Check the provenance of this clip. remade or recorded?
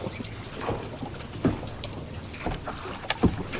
recorded